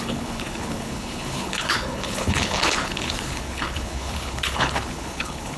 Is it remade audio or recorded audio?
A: remade